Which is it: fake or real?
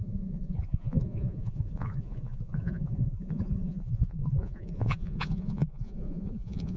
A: fake